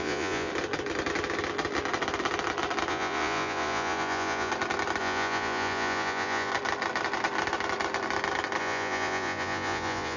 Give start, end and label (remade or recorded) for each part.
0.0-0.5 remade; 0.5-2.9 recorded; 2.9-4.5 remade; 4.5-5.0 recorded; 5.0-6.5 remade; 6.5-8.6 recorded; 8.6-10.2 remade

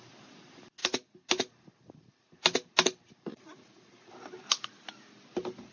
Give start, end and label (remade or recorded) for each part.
0.0-3.3 recorded; 3.3-4.1 remade; 4.1-5.7 recorded

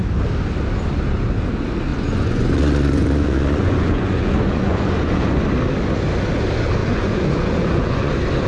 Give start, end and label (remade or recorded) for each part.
0.0-1.9 recorded; 1.9-5.4 remade; 5.4-6.8 recorded; 6.8-8.1 remade; 8.1-8.5 recorded

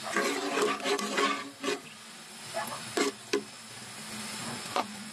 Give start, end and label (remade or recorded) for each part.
0.0-4.4 recorded; 4.4-5.1 remade

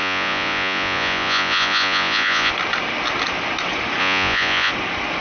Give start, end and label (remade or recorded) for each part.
0.0-2.5 remade; 2.5-4.0 recorded; 4.0-4.7 remade; 4.7-5.2 recorded

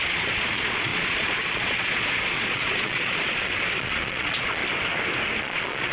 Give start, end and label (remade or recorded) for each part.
0.0-4.6 remade; 4.6-5.4 recorded; 5.4-5.9 remade

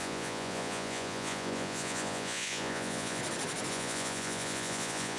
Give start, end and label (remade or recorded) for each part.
0.0-3.2 remade; 3.2-3.7 recorded; 3.7-5.2 remade

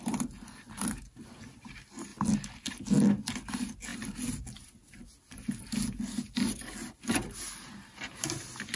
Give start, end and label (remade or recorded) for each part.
0.0-8.8 recorded